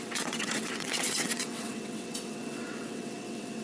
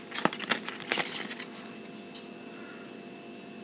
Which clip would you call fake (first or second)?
first